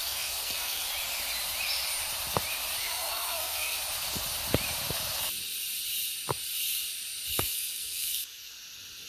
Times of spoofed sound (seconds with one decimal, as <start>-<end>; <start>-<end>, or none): 0.0-0.9; 2.8-3.8; 7.3-8.5